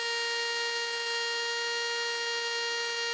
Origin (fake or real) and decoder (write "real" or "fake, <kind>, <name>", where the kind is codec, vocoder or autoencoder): real